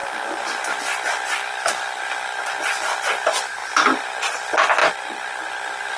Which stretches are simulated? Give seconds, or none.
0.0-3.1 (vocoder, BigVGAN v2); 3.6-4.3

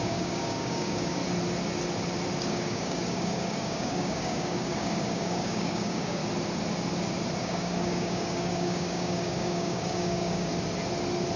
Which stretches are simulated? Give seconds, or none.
0.0-1.2 (codec, DAC); 2.4-6.2; 7.4-10.5

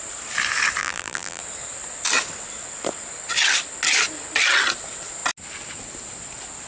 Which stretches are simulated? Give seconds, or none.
0.8-1.4 (vocoder, BigVGAN v2)